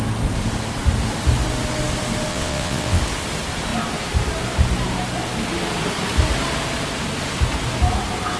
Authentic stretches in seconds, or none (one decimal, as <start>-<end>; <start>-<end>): 0.0-2.3; 3.0-8.4